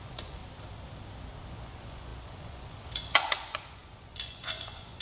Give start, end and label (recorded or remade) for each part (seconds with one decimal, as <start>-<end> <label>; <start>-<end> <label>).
0.0-0.4 remade; 0.4-1.5 recorded; 1.5-5.0 remade